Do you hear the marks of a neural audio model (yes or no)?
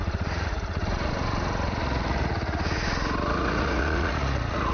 yes